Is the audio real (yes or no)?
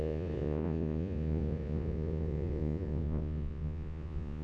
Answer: no